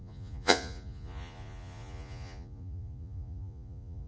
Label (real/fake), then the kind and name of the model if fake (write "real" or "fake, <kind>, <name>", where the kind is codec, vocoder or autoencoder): fake, vocoder, Vocos